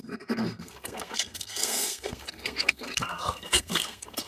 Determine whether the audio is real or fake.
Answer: fake